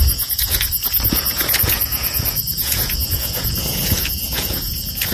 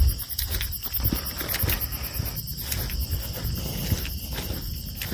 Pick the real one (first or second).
second